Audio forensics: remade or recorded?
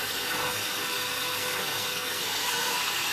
remade